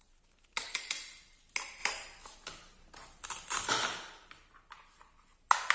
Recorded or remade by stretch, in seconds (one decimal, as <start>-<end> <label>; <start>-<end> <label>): 0.0-5.7 recorded